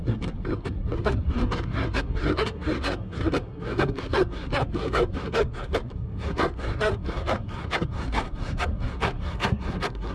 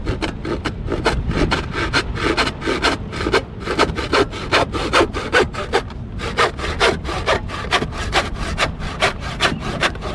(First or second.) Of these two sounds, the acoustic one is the second